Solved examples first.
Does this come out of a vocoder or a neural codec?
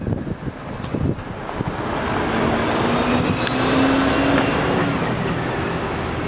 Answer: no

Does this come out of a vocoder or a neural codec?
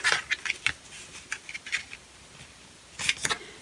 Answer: no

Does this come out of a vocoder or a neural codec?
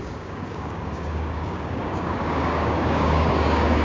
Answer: yes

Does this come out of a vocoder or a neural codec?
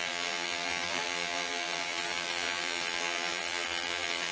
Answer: yes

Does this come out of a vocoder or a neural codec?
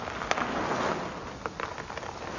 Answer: no